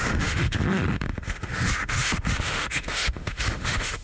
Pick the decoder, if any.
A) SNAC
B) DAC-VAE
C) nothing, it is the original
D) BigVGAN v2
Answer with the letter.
B